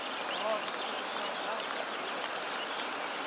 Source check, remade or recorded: recorded